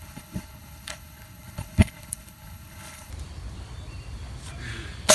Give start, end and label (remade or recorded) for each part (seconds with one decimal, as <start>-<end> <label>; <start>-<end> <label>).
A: 0.0-3.1 remade; 3.1-5.1 recorded